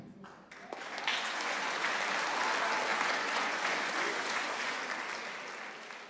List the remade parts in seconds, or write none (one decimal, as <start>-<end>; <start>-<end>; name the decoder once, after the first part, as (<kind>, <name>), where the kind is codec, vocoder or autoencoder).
1.1-2.0 (vocoder, Vocos); 2.9-4.8